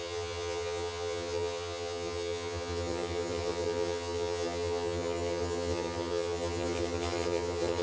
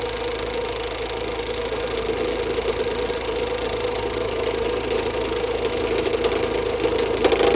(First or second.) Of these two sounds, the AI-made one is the first